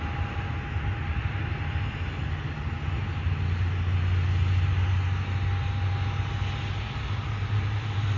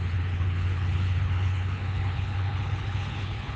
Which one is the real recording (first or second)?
first